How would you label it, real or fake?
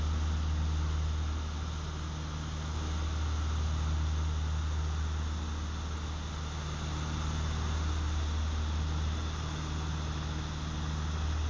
real